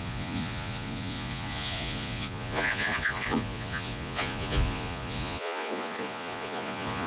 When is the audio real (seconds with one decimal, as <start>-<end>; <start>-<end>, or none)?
none